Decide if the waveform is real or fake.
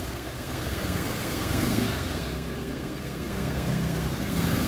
fake